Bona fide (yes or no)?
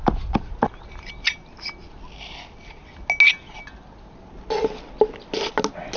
yes